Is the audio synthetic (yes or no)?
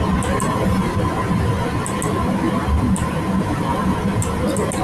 no